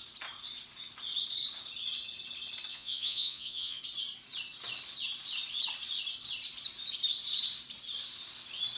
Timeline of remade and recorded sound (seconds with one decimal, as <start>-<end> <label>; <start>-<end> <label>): 0.0-2.7 recorded; 2.7-3.8 remade; 3.8-8.8 recorded